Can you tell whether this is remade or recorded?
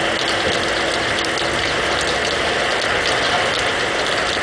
recorded